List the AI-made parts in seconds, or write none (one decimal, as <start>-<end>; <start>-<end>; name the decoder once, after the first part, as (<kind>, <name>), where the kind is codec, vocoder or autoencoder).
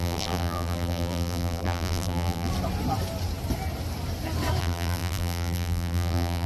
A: 0.0-2.5 (vocoder, BigVGAN v2); 4.6-6.5